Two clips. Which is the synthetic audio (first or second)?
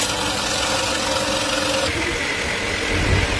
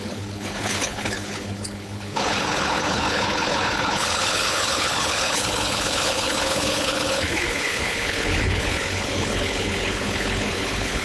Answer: second